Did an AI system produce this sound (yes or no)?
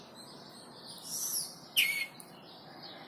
no